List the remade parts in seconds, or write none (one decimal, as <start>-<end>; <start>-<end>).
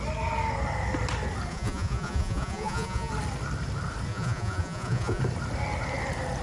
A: 1.5-3.1; 4.1-5.2